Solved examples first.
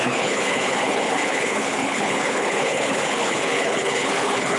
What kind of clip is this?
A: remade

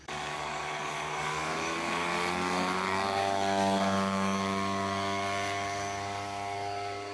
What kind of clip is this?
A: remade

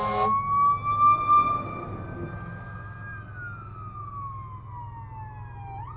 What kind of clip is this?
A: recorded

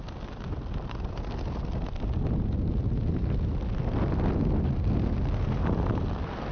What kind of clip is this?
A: recorded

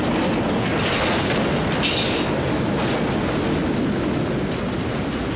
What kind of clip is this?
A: recorded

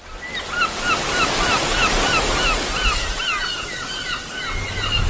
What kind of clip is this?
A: recorded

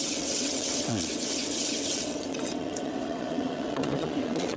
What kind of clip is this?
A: remade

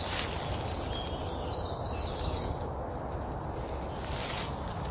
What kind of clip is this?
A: recorded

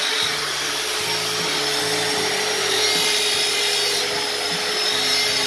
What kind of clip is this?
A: recorded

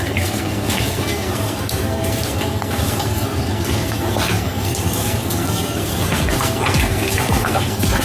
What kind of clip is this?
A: remade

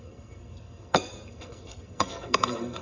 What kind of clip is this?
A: remade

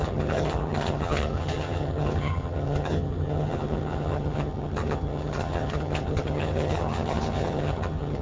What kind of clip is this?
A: remade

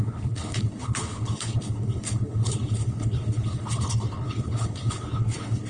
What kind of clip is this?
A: remade